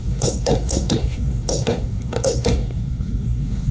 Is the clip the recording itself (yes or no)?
no